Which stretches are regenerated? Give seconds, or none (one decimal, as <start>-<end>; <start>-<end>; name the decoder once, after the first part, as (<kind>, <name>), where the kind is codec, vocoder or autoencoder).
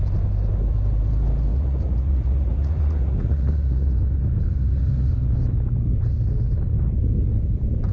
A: 1.5-4.0 (vocoder, Vocos)